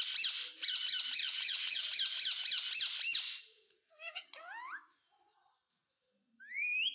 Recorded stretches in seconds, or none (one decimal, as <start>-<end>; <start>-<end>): 0.0-1.2; 1.8-6.9